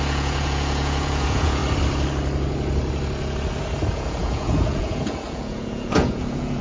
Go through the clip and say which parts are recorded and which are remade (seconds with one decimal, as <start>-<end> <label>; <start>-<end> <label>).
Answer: 0.0-1.6 remade; 1.6-3.9 recorded; 3.9-6.6 remade